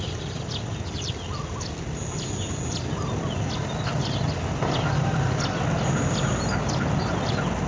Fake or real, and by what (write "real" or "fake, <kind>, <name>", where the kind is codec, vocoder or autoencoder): real